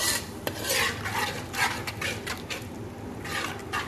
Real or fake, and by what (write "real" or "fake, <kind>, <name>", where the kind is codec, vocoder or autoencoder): real